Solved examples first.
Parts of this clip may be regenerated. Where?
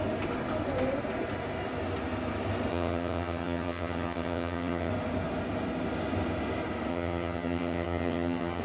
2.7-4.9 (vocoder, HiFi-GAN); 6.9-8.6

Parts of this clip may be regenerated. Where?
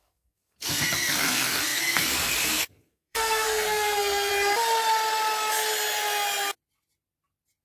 0.0-4.3 (codec, SNAC)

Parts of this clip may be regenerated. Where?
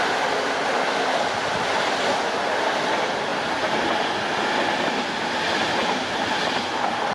none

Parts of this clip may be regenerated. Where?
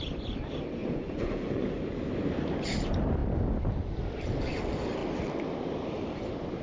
0.8-1.7 (vocoder, Vocos)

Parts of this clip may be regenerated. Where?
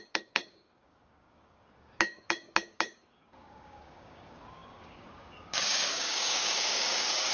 0.0-7.3 (codec, DAC)